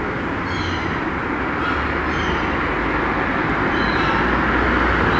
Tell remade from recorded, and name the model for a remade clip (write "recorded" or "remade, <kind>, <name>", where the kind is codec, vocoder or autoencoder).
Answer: recorded